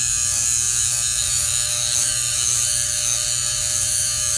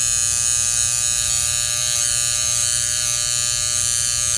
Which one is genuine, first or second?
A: second